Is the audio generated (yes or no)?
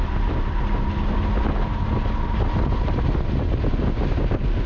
no